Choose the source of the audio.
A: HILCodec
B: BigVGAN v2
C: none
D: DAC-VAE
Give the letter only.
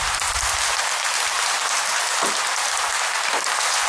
C